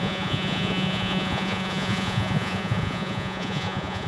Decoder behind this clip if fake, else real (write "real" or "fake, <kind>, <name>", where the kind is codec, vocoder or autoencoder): fake, vocoder, Vocos